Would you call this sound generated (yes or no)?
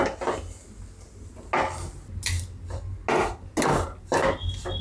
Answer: no